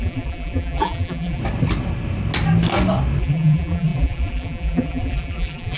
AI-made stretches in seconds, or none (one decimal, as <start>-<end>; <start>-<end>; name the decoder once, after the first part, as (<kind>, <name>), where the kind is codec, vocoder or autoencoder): 0.0-1.4 (vocoder, BigVGAN v2); 3.2-5.8